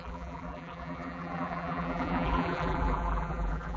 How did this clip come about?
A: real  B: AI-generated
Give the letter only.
B